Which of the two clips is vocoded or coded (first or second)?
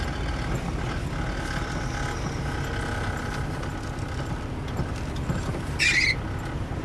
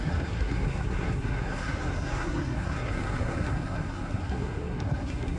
second